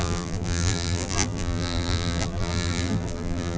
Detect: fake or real fake